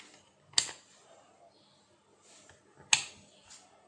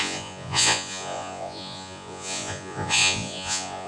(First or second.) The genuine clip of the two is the first